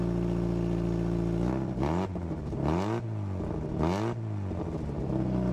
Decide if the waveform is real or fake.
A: real